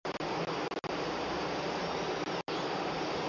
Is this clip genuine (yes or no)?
yes